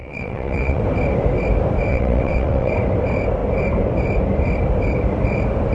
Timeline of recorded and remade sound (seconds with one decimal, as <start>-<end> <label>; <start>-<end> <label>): 0.0-0.8 remade; 0.8-1.9 recorded; 1.9-2.7 remade; 2.7-5.7 recorded